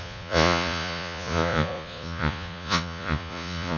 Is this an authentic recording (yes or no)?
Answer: no